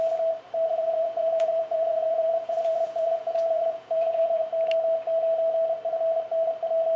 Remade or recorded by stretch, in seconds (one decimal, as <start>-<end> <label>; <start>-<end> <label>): 0.0-0.7 recorded; 0.7-4.5 remade; 4.5-7.0 recorded